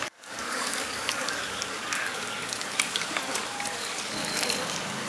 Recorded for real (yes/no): no